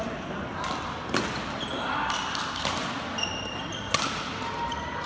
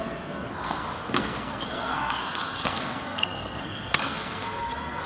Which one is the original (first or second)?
first